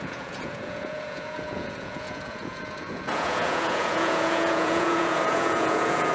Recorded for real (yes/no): no